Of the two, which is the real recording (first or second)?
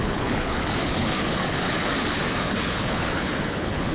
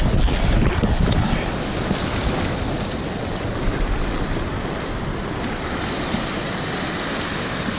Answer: second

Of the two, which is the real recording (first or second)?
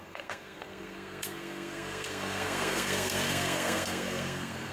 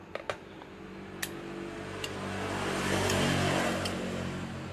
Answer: second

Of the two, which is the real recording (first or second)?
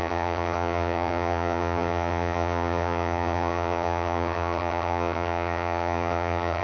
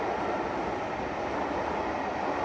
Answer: second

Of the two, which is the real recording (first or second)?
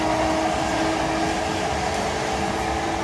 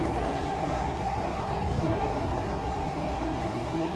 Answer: first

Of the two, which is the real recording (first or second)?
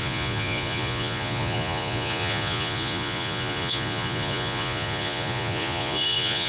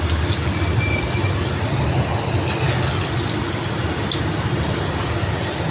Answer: second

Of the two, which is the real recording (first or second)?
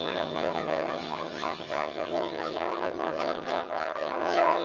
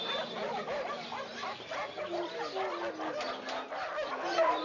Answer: second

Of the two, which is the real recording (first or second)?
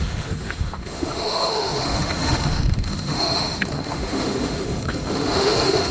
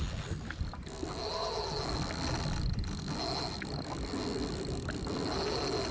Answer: second